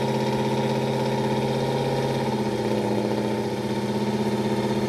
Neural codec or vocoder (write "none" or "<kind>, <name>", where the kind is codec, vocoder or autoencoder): none